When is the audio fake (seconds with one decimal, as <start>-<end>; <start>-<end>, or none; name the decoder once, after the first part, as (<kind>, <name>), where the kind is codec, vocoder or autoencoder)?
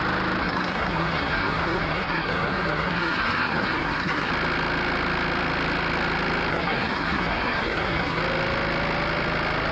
0.4-4.3 (codec, SNAC); 6.5-8.2